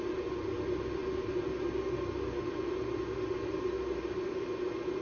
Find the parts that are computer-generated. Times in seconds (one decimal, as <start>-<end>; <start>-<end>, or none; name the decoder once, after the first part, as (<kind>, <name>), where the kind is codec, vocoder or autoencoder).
none